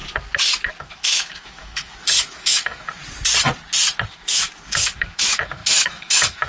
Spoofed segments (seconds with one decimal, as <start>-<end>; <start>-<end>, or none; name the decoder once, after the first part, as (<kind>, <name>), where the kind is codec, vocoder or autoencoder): 0.8-3.0 (autoencoder, DAC-VAE); 4.1-6.5

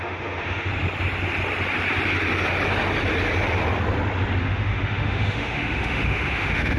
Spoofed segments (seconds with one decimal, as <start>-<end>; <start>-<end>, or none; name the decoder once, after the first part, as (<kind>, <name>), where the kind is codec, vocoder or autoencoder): 0.0-0.7 (autoencoder, DAC-VAE); 4.4-6.8

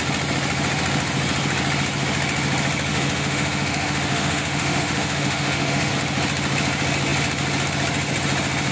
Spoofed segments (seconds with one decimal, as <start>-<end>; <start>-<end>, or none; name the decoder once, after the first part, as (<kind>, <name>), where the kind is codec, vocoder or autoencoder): 2.9-5.9 (autoencoder, DAC-VAE)

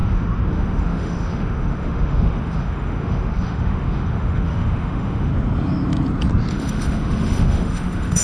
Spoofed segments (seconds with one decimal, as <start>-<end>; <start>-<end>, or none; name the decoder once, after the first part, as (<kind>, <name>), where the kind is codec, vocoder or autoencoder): 0.0-5.3 (autoencoder, DAC-VAE); 6.5-8.2

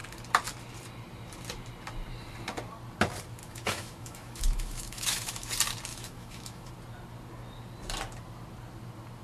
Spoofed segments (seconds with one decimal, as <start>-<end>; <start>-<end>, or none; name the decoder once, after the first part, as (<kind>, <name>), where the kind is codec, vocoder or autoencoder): 3.4-5.5 (autoencoder, DAC-VAE); 5.9-6.7

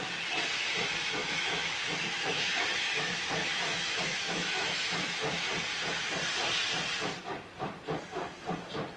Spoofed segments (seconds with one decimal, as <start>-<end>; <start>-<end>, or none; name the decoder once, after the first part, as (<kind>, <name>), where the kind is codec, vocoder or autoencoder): 1.2-5.5 (autoencoder, DAC-VAE)

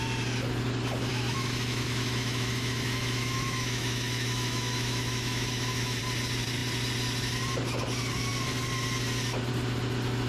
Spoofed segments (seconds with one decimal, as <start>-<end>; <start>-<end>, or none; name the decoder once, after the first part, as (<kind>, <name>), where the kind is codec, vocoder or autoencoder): 1.1-6.0 (autoencoder, DAC-VAE)

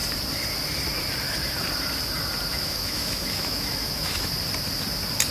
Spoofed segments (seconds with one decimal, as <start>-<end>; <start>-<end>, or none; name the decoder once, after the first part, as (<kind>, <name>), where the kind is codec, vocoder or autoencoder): 2.5-4.3 (autoencoder, DAC-VAE)